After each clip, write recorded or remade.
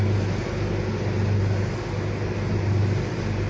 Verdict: recorded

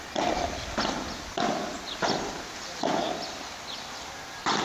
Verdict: recorded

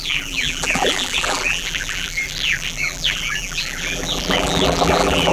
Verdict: remade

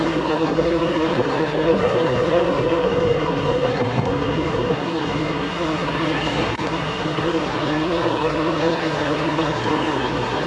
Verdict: remade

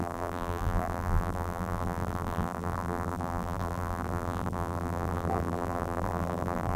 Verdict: remade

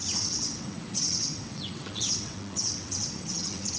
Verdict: remade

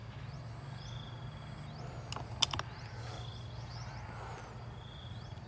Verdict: recorded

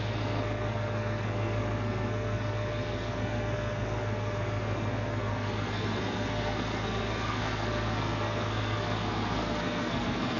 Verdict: remade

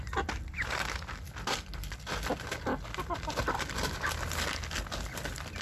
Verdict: recorded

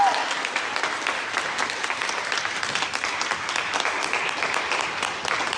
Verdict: recorded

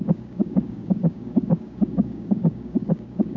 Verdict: remade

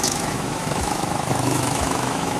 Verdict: remade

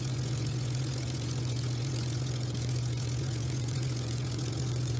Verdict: remade